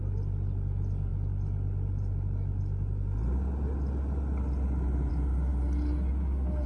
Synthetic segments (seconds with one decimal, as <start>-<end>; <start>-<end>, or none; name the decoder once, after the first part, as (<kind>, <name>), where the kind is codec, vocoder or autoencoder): none